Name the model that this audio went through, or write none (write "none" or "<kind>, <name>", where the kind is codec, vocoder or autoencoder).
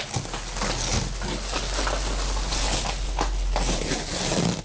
none